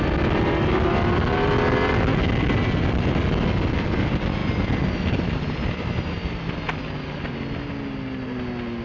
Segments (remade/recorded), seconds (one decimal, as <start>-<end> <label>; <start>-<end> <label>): 0.0-8.8 recorded

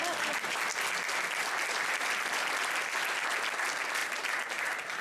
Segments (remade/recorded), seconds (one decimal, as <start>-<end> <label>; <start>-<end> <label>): 0.0-4.0 recorded; 4.0-5.0 remade

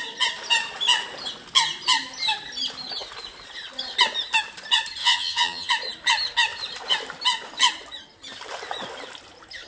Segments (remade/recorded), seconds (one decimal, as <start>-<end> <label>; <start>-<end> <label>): 0.0-5.0 recorded; 5.0-5.7 remade; 5.7-9.7 recorded

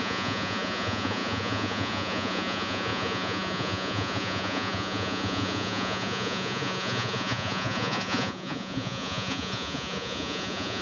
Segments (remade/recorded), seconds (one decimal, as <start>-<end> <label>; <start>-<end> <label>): 0.0-10.8 remade

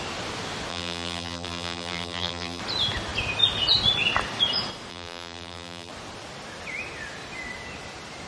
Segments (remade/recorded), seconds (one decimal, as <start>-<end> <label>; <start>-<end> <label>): 0.0-0.7 recorded; 0.7-2.6 remade; 2.6-4.9 recorded; 4.9-5.9 remade; 5.9-8.3 recorded

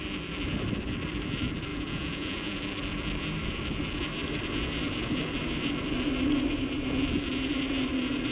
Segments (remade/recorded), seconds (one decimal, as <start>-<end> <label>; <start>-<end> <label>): 0.0-1.7 recorded; 1.7-2.6 remade; 2.6-8.3 recorded

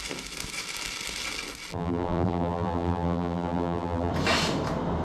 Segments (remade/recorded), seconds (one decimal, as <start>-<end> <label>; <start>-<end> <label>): 0.0-1.7 recorded; 1.7-4.1 remade; 4.1-5.0 recorded

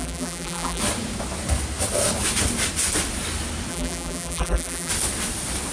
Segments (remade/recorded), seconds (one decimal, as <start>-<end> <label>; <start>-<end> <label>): 0.0-0.8 remade; 0.8-3.7 recorded; 3.7-4.9 remade; 4.9-5.7 recorded